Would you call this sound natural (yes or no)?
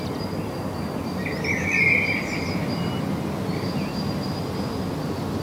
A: yes